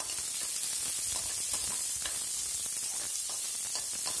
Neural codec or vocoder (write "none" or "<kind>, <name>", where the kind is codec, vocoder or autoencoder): none